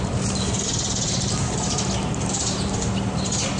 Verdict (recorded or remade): remade